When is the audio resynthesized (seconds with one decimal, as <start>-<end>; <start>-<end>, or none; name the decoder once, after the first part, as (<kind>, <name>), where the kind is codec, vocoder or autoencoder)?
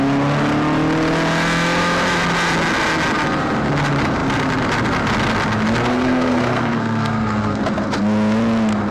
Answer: 5.9-7.6 (codec, SNAC)